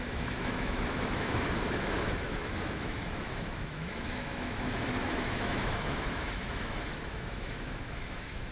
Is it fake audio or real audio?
fake